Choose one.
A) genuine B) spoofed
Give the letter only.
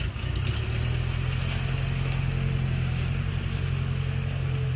A